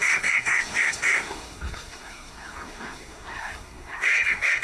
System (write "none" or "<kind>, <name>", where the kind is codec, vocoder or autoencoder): codec, SNAC